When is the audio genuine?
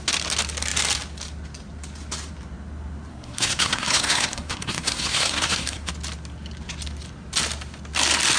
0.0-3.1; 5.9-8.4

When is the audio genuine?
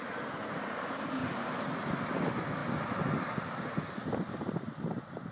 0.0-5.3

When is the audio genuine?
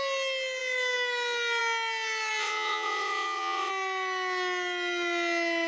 0.0-2.4; 3.7-5.7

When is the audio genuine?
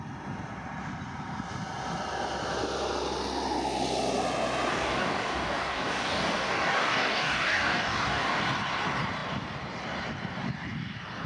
0.0-4.7; 8.4-11.3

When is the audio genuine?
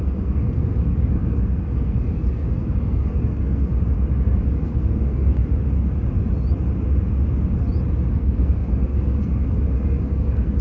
3.7-4.6; 5.4-8.1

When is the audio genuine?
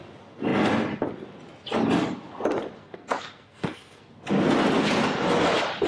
0.0-2.8; 4.1-5.9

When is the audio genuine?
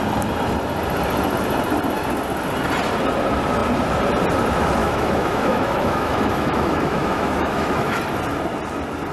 0.0-4.8; 8.0-9.1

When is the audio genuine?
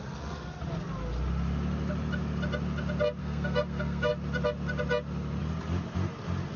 0.0-3.2; 4.1-6.6